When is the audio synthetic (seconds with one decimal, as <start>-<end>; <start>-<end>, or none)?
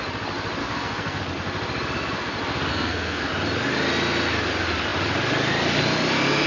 0.6-1.2; 2.7-3.3